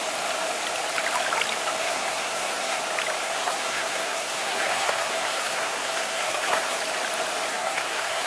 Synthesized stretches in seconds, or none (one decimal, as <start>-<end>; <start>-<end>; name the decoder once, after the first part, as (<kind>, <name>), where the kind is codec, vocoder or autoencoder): 1.8-2.8 (codec, SNAC); 3.2-6.8; 7.5-8.3